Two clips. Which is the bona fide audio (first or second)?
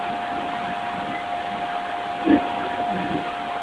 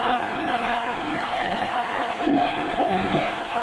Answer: first